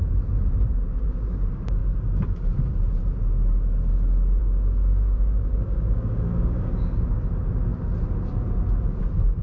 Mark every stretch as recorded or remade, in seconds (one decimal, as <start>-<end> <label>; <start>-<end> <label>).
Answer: 0.0-4.4 recorded; 4.4-6.7 remade; 6.7-9.4 recorded